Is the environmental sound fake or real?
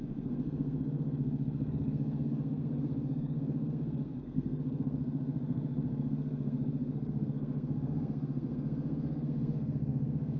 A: fake